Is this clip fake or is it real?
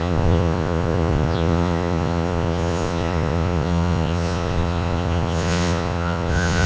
fake